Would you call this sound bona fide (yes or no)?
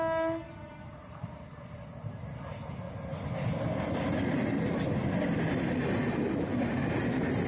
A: yes